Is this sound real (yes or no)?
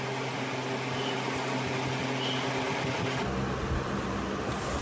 yes